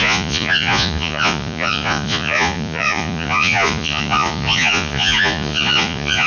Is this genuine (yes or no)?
no